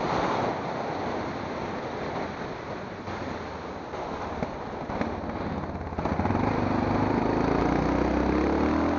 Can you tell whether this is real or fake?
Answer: real